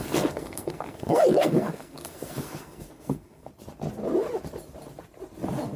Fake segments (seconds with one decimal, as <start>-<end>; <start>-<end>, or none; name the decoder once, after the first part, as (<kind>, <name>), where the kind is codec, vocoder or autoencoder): 0.0-3.5 (codec, SNAC)